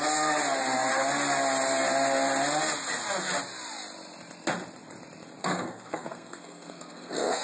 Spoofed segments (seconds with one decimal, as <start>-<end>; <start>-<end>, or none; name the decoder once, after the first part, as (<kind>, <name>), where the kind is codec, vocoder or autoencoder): 5.4-7.4 (codec, SNAC)